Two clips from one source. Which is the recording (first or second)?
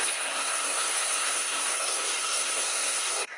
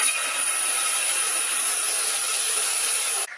second